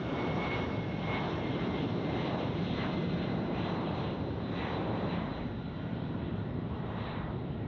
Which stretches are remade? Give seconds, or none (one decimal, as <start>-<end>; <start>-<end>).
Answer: 0.0-7.7